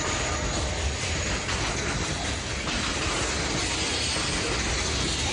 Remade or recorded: recorded